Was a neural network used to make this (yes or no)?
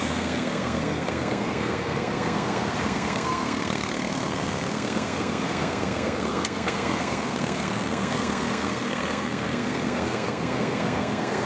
yes